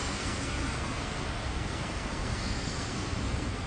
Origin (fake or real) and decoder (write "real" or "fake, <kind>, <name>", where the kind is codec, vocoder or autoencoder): fake, codec, SNAC